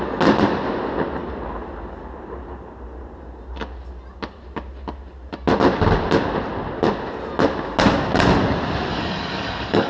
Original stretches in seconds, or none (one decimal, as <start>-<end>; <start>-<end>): 0.0-8.9